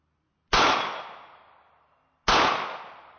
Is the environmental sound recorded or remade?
recorded